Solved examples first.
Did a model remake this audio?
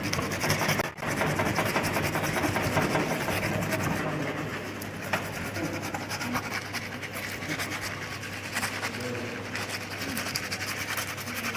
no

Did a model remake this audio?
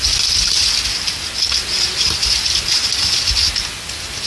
no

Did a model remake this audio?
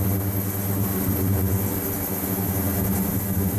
no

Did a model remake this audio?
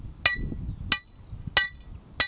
no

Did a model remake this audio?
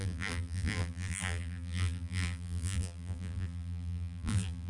yes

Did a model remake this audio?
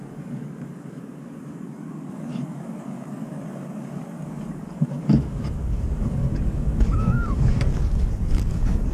yes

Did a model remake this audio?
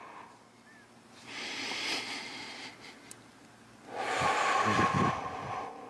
no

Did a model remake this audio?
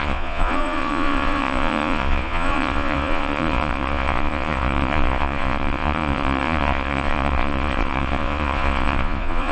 yes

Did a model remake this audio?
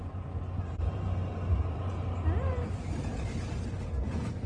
yes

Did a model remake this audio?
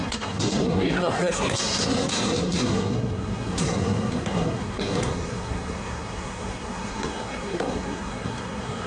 yes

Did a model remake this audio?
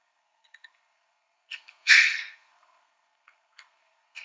yes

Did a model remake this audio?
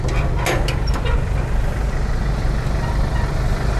no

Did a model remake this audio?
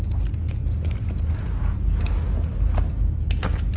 no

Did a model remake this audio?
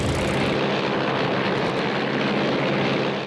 no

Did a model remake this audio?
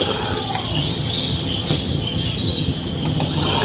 yes